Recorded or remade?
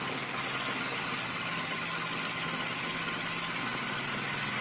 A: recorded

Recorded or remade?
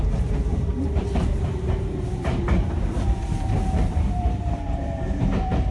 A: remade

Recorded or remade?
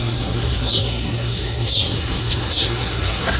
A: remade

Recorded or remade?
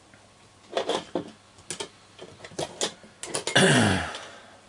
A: recorded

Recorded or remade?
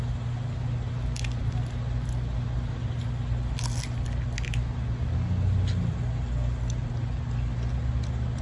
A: recorded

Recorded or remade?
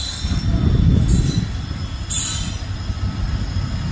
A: recorded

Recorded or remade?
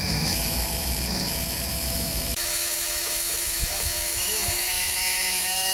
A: remade